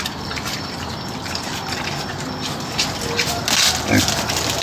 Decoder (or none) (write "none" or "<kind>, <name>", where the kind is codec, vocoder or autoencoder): none